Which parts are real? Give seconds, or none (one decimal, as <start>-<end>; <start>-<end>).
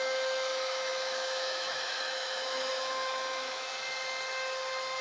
3.7-5.0